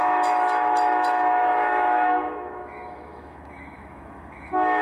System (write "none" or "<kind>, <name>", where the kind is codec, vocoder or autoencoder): autoencoder, DAC-VAE